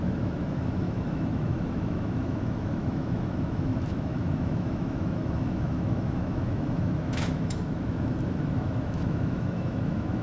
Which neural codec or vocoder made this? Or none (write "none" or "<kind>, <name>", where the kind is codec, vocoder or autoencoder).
autoencoder, DAC-VAE